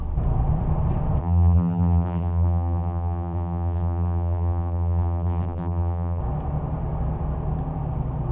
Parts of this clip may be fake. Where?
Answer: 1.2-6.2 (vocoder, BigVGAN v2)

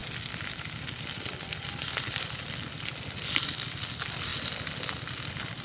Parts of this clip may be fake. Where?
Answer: none